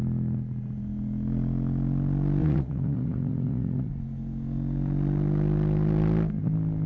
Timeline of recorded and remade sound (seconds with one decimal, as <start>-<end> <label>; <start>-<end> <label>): 0.0-2.4 recorded; 2.4-3.9 remade; 3.9-6.9 recorded